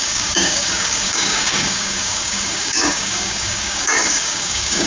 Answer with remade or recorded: remade